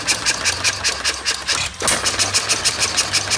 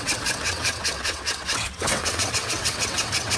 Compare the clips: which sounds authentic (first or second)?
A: first